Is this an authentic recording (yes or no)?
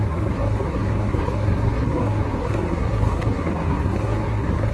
no